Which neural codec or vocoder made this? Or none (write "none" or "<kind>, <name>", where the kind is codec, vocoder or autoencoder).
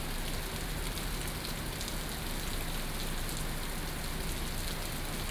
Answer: none